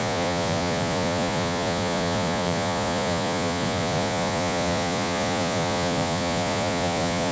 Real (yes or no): no